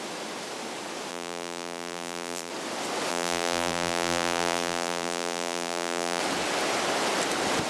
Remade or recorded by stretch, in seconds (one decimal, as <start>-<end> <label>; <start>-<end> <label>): 0.0-1.1 recorded; 1.1-2.5 remade; 2.5-3.1 recorded; 3.1-6.2 remade; 6.2-7.7 recorded